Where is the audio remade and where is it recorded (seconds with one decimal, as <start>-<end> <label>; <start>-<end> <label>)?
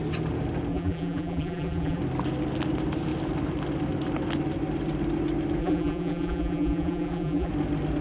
0.0-0.7 recorded; 0.7-2.0 remade; 2.0-5.6 recorded; 5.6-7.5 remade; 7.5-8.0 recorded